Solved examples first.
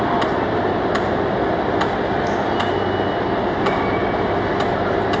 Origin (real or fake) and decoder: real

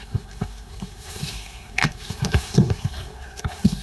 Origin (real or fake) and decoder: fake, codec, SNAC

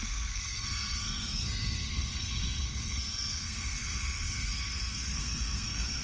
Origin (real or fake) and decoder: fake, codec, SNAC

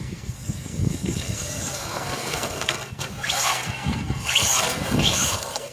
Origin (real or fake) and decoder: fake, codec, SNAC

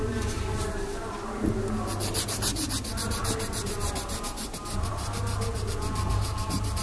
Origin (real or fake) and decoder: real